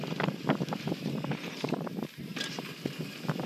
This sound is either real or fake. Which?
real